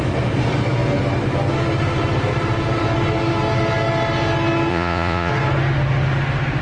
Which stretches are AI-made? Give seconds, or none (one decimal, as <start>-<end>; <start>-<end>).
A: 4.7-5.3